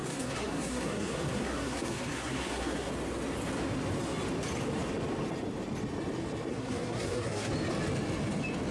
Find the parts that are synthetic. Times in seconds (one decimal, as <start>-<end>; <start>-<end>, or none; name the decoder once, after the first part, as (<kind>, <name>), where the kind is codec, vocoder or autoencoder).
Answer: 0.0-2.9 (codec, SNAC); 6.5-7.5